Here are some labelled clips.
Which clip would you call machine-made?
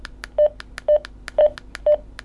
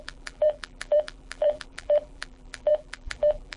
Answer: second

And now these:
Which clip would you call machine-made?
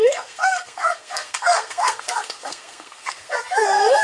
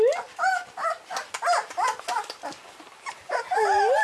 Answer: first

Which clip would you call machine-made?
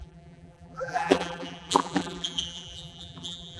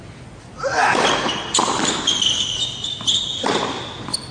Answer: first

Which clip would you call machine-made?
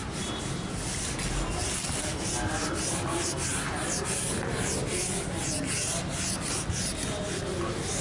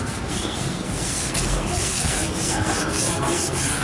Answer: second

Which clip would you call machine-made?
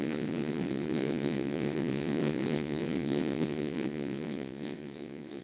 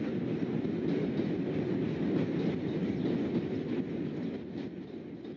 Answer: first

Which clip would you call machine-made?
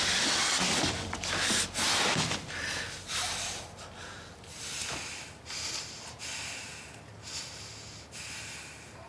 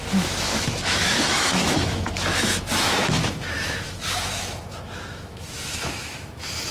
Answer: second